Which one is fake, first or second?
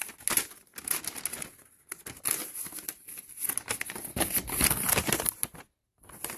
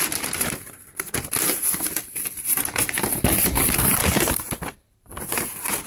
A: second